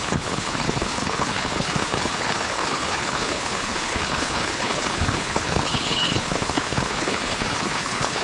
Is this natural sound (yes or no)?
no